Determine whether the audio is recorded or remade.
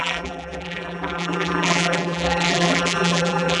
remade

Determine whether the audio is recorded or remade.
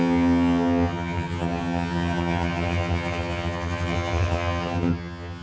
remade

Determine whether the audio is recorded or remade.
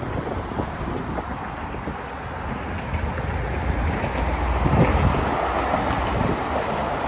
recorded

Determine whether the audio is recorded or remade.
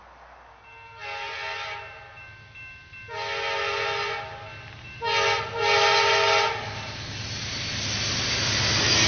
recorded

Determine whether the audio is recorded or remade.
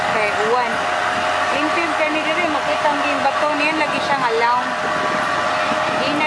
recorded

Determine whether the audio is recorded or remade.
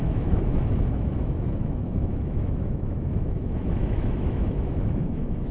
remade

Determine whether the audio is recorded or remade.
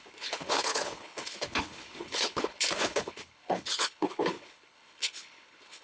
remade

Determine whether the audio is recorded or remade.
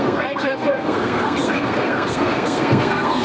remade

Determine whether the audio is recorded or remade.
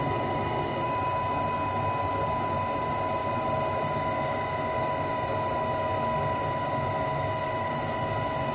recorded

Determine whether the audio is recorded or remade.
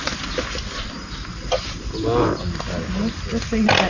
recorded